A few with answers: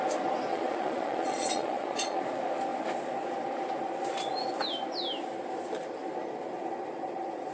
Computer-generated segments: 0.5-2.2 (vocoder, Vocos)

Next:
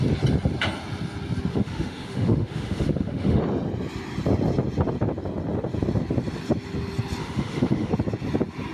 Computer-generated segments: 1.5-3.4 (autoencoder, DAC-VAE); 7.2-7.9

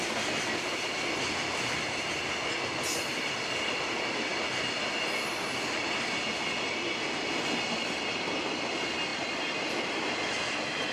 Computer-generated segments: none

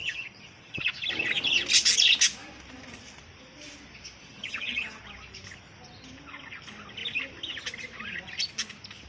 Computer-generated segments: 0.0-0.9 (vocoder, HiFi-GAN); 4.2-5.0

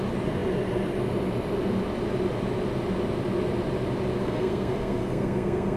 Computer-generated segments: 4.2-5.8 (codec, SNAC)

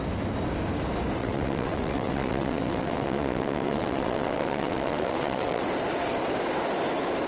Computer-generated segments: 1.2-5.6 (vocoder, WaveNeXt)

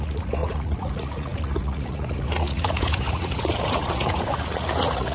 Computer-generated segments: 0.0-5.1 (vocoder, Vocos)

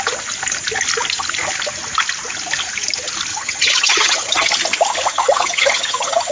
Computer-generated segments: 3.3-4.5 (vocoder, HiFi-GAN); 5.1-6.3